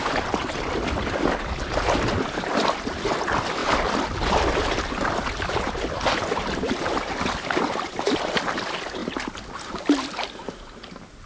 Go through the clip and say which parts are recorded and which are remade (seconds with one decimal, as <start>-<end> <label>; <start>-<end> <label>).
0.0-11.3 recorded